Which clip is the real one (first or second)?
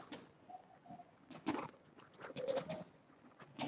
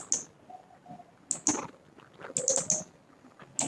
second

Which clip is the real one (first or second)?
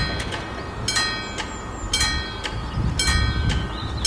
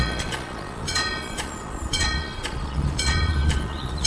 first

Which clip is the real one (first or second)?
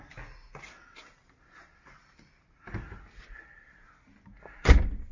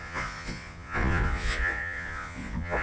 first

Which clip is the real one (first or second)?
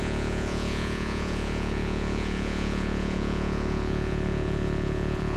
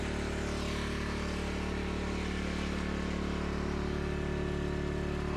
second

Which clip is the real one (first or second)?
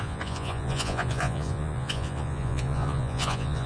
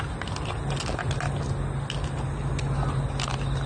second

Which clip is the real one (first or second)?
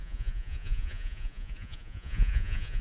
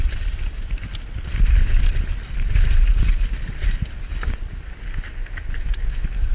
second